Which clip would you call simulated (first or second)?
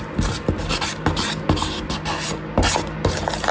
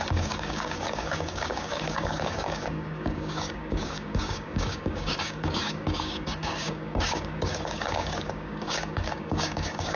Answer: second